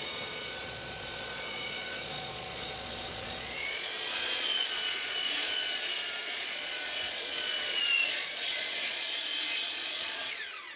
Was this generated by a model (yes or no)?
yes